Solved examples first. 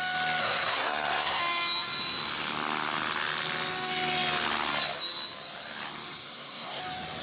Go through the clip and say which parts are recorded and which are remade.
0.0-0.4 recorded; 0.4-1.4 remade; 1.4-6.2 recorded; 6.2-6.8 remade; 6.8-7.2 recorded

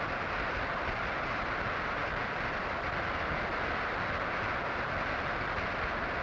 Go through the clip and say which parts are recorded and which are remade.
0.0-6.2 recorded

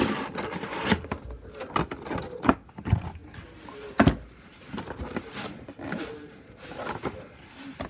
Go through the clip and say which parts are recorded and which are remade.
0.0-7.9 recorded

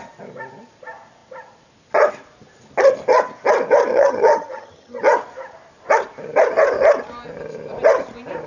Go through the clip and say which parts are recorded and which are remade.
0.0-3.9 recorded; 3.9-5.0 remade; 5.0-8.5 recorded

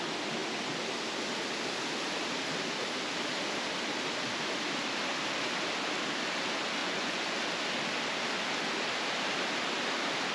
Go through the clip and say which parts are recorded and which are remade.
0.0-6.8 recorded; 6.8-7.4 remade; 7.4-10.3 recorded